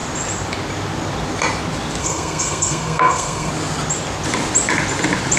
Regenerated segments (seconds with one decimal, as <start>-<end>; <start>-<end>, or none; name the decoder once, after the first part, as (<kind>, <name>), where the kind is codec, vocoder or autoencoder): 2.0-3.5 (codec, SNAC)

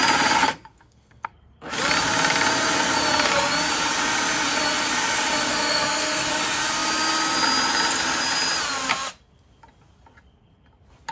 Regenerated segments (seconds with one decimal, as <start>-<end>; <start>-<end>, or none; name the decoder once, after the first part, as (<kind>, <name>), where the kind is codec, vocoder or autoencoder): 0.4-1.3 (codec, SNAC); 5.5-6.3

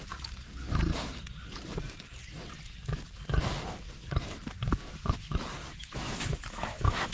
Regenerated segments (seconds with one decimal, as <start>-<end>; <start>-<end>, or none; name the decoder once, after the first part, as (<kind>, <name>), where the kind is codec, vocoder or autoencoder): 5.6-7.1 (autoencoder, DAC-VAE)

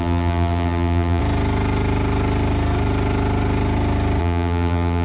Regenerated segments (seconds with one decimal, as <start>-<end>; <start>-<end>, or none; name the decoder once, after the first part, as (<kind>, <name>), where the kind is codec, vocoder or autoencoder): 0.0-1.2 (vocoder, BigVGAN v2); 4.2-5.0

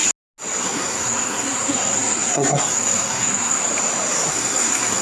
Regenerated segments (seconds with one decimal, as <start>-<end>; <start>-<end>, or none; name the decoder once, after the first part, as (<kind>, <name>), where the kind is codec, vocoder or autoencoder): 0.6-3.6 (codec, SNAC); 4.3-5.0